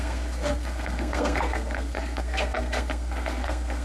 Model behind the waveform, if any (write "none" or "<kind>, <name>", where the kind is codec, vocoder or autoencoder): codec, SNAC